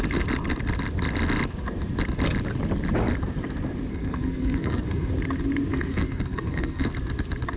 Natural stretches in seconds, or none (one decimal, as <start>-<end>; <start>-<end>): 0.0-3.9; 5.1-5.7; 6.9-7.6